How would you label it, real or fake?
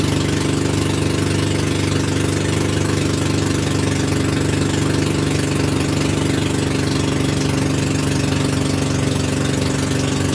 real